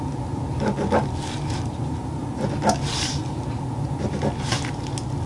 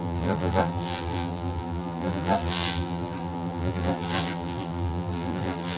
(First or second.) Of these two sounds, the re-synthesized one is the second